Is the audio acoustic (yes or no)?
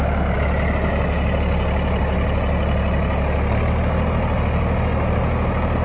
yes